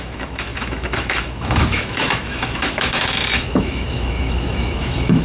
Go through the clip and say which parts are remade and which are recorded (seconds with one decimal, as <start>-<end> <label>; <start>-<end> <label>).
0.0-5.2 remade